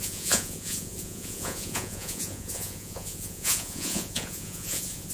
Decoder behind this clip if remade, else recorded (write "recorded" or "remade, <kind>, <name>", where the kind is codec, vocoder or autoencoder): remade, vocoder, Vocos